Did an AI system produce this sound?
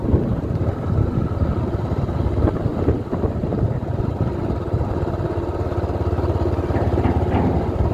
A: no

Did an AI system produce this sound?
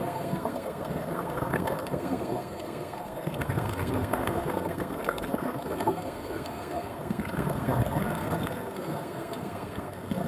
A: yes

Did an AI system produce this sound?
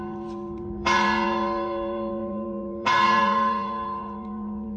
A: yes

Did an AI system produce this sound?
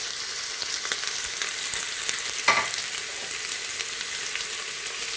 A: no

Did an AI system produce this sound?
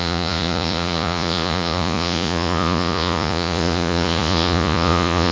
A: yes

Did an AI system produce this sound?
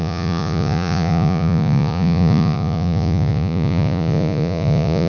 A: yes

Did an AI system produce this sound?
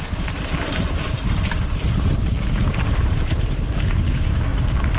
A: yes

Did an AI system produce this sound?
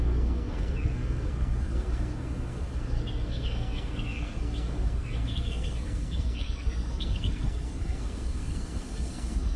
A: yes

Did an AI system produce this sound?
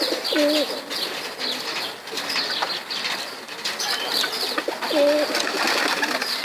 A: no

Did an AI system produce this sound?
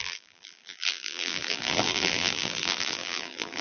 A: yes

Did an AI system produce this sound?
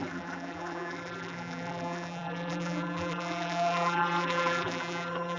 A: yes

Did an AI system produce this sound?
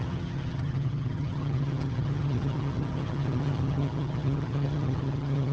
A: yes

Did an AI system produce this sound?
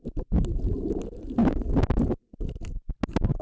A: no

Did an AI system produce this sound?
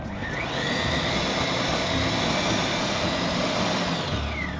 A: no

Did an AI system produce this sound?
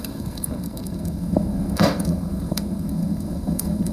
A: yes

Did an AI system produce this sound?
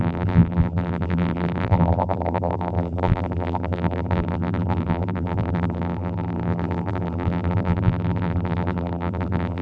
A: yes